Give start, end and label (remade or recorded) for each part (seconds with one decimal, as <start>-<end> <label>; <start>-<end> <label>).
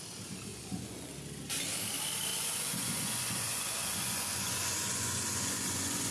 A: 0.0-0.5 recorded; 0.5-1.1 remade; 1.1-2.3 recorded; 2.3-6.1 remade